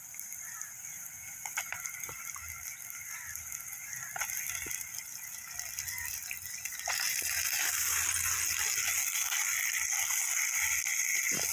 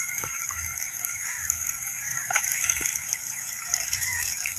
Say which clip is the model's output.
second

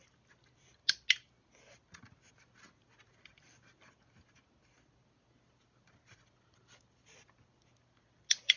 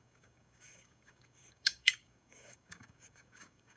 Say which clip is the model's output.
second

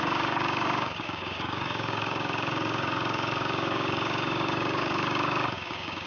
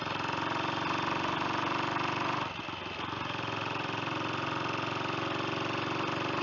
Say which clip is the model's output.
first